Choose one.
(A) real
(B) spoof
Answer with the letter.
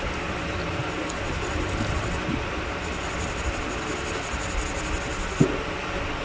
A